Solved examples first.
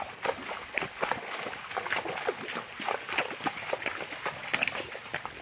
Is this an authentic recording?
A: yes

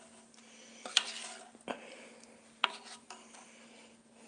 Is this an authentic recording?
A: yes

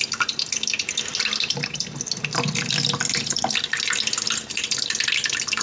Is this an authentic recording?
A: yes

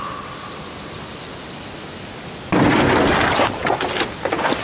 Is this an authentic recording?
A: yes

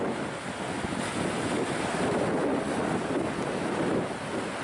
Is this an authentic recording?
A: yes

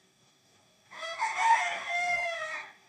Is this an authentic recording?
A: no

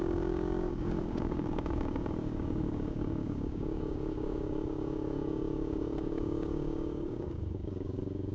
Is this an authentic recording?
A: no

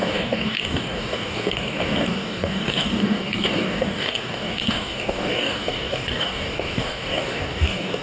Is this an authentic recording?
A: no